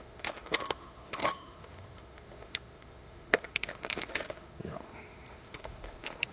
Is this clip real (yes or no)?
no